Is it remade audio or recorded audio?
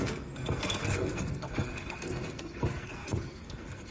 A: remade